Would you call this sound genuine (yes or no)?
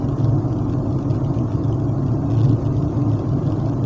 yes